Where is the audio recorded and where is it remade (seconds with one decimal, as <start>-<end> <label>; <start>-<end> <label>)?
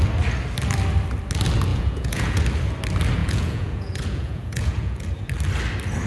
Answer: 0.0-1.7 recorded; 1.7-2.4 remade; 2.4-3.2 recorded; 3.2-5.1 remade; 5.1-6.1 recorded